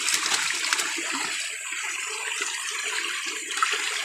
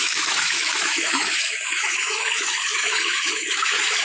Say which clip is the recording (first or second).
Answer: first